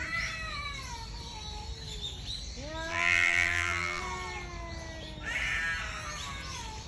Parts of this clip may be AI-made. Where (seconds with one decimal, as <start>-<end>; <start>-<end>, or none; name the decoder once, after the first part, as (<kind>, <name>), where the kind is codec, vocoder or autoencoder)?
2.9-4.0 (vocoder, BigVGAN v2)